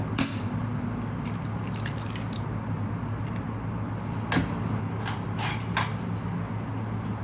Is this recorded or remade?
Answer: recorded